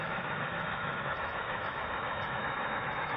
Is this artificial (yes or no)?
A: yes